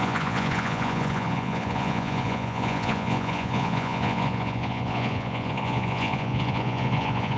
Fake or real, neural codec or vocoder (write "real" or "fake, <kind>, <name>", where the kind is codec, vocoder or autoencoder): fake, vocoder, Vocos